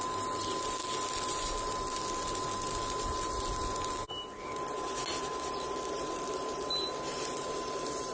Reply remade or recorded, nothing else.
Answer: recorded